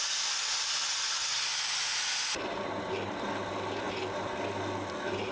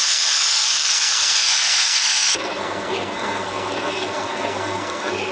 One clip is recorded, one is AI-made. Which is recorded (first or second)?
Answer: first